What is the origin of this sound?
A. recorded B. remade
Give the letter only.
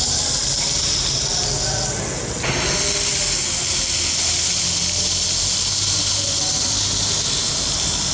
A